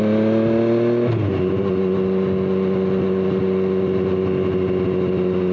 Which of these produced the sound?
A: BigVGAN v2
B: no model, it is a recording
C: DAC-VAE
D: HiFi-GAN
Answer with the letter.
B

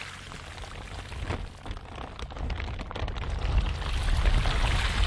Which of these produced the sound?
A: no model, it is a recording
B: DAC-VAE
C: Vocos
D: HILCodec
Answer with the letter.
A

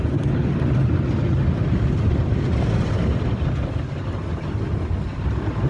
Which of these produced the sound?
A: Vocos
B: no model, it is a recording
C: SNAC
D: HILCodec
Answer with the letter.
B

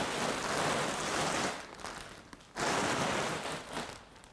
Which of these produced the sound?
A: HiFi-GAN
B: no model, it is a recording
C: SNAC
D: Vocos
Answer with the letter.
B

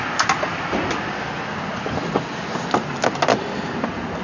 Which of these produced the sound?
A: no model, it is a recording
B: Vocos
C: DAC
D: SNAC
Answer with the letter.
A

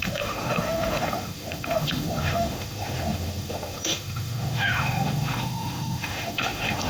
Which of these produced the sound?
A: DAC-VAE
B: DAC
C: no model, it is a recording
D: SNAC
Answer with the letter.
A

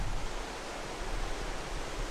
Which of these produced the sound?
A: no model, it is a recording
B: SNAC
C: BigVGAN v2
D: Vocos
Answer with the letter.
A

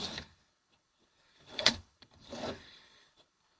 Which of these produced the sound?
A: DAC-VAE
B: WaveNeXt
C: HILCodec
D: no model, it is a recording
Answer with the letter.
C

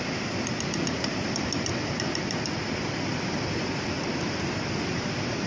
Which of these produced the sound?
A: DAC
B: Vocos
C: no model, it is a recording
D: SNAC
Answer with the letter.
C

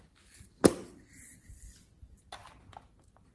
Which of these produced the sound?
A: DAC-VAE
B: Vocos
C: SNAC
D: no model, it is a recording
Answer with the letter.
D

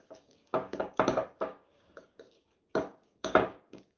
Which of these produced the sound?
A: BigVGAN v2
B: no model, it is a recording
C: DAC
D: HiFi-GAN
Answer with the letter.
C